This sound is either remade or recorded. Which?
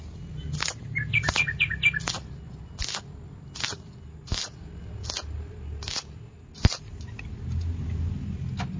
recorded